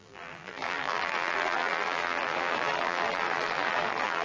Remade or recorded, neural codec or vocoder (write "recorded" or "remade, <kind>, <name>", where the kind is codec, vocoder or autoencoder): remade, vocoder, BigVGAN v2